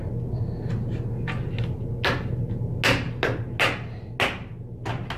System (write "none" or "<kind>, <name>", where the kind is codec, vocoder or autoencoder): none